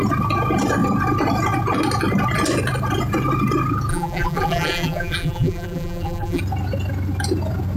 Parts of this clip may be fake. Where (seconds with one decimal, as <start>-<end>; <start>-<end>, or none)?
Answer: 3.9-6.4